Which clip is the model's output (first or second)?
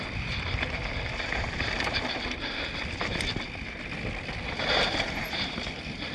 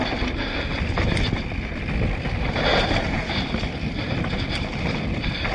first